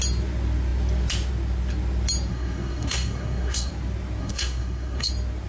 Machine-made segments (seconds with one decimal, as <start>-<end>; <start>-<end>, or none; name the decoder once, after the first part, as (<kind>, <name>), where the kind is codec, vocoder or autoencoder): 2.3-3.7 (codec, SNAC); 4.2-5.1